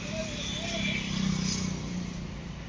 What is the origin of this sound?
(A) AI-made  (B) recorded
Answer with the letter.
B